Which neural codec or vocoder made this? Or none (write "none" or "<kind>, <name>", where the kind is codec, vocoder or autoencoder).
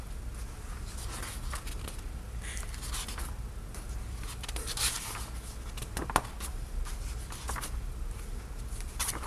none